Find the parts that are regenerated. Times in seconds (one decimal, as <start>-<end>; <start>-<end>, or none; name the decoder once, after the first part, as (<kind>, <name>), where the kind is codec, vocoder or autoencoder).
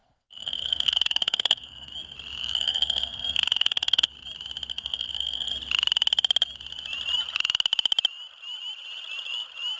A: 0.0-1.9 (codec, SNAC); 2.4-4.1; 4.7-5.5